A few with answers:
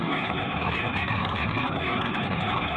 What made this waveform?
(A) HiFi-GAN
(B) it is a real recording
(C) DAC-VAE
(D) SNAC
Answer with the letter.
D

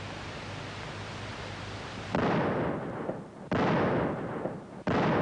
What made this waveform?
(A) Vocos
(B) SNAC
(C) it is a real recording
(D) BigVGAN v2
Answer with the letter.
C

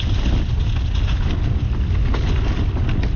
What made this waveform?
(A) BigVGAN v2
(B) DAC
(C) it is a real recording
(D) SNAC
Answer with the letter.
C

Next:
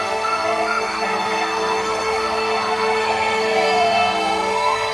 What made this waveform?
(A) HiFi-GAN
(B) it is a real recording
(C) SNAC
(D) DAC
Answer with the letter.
C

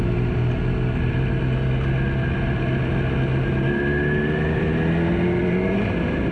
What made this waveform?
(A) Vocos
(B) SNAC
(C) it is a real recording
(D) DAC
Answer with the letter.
C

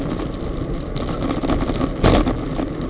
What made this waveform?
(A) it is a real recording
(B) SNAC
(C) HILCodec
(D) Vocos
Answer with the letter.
A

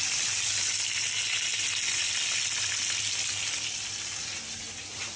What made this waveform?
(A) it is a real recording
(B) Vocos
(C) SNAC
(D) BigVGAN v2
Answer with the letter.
A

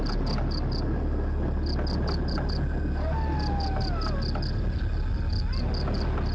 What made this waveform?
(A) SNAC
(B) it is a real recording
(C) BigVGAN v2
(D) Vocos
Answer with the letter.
B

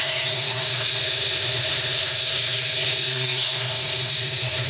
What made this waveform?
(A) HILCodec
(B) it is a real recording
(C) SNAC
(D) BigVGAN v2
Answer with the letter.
C